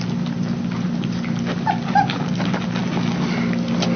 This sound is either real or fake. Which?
real